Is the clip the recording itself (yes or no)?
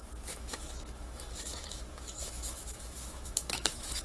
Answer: no